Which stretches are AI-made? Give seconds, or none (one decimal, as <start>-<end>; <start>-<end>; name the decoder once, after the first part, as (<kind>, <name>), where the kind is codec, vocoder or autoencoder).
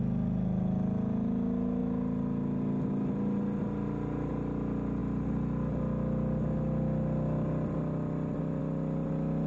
none